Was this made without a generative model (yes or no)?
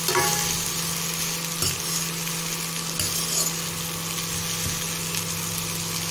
yes